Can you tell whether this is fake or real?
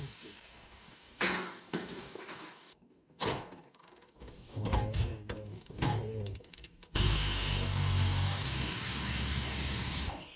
fake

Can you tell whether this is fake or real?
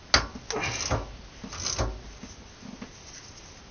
real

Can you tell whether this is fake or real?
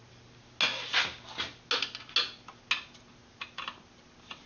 real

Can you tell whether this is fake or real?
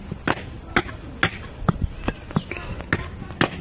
real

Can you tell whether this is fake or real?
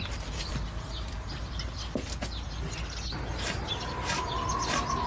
real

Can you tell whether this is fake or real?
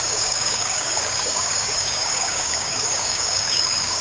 fake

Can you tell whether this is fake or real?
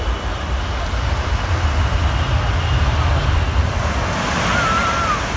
real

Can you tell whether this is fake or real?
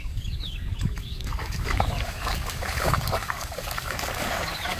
fake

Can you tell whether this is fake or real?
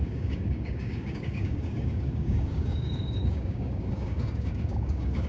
fake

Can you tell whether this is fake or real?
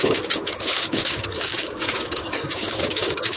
fake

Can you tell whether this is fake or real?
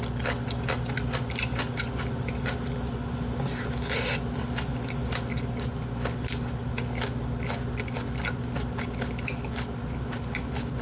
real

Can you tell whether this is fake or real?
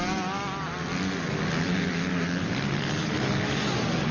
real